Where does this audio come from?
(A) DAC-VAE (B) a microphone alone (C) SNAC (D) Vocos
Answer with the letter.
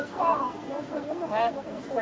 C